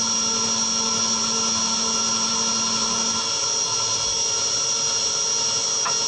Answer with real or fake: real